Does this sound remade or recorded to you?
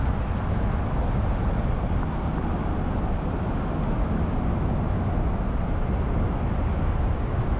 recorded